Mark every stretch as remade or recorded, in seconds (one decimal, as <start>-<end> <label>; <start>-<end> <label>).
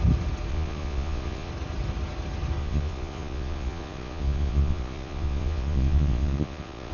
0.0-0.5 recorded; 0.5-1.5 remade; 1.5-2.6 recorded; 2.6-6.9 remade